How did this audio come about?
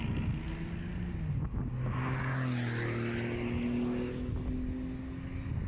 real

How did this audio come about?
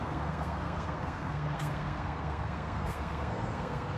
fake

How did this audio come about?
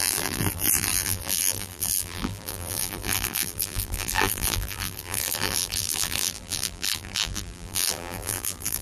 fake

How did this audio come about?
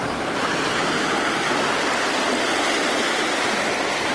real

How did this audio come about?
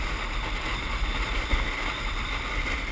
real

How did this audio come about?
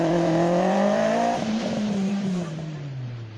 fake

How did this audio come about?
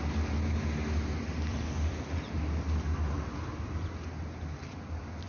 real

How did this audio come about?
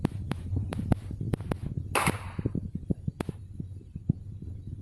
real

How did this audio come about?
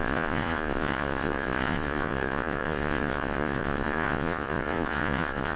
fake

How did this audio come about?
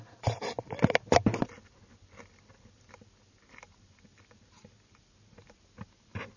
real